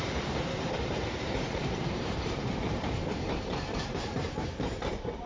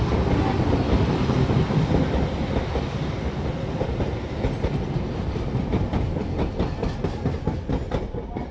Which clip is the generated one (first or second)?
first